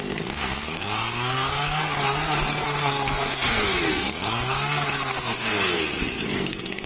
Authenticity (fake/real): fake